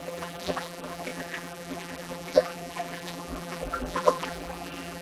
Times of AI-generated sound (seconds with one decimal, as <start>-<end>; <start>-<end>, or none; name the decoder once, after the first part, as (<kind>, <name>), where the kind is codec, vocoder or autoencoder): 0.0-5.0 (vocoder, BigVGAN v2)